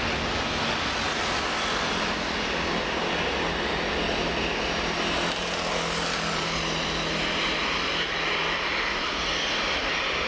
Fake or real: real